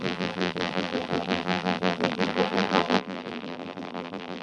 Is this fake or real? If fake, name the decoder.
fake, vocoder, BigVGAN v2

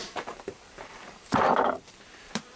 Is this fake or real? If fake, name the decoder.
fake, vocoder, BigVGAN v2